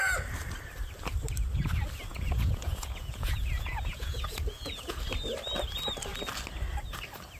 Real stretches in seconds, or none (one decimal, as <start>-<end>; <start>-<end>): 0.0-2.1; 5.0-7.4